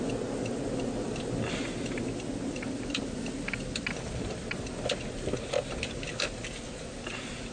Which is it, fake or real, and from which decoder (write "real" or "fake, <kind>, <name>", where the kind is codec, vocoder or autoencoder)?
real